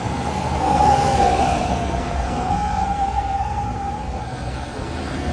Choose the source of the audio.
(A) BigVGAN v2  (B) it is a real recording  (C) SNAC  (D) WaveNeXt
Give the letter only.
C